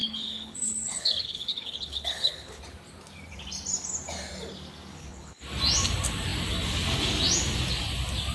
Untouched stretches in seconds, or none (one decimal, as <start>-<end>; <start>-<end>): 2.6-4.9; 5.4-8.3